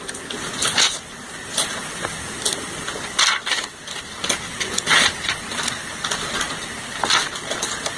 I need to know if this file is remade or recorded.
recorded